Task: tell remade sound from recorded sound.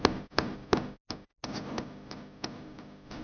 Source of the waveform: recorded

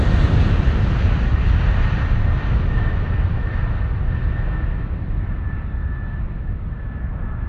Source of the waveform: recorded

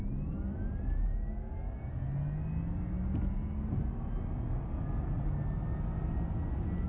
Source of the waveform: recorded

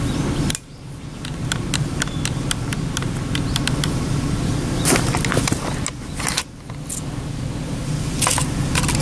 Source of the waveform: recorded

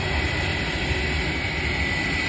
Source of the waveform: recorded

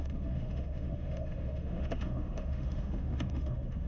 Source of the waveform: remade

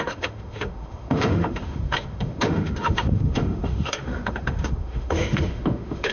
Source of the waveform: remade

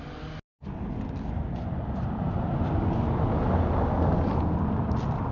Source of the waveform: recorded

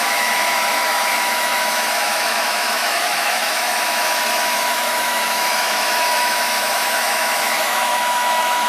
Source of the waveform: remade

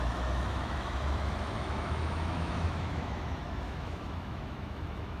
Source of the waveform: remade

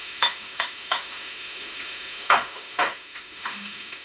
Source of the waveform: remade